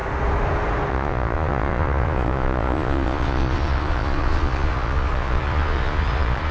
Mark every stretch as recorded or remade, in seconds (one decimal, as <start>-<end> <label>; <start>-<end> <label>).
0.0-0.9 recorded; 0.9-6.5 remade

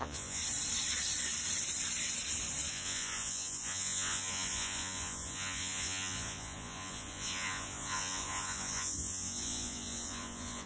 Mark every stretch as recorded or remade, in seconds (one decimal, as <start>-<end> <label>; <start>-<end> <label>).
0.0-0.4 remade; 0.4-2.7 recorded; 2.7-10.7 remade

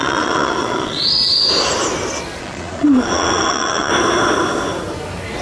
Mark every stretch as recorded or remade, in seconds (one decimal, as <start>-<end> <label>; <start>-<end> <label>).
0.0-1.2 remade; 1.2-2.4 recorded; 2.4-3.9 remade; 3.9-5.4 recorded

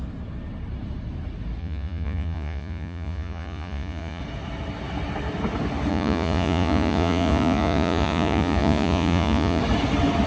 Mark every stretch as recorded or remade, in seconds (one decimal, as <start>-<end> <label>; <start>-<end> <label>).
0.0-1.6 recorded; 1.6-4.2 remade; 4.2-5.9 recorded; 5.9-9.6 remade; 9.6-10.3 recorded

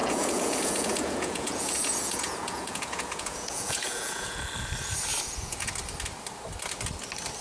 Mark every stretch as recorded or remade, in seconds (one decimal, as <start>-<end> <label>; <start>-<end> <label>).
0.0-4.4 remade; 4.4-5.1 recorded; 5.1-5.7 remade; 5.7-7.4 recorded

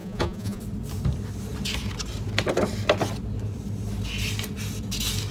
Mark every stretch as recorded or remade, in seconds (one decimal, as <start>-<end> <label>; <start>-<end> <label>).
0.0-0.6 remade; 0.6-5.3 recorded